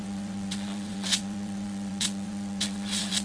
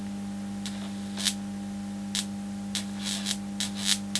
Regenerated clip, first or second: first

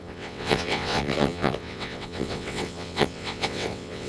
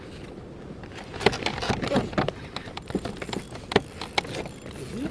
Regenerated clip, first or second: first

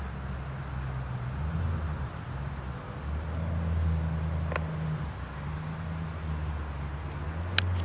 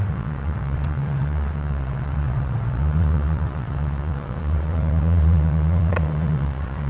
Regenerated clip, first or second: second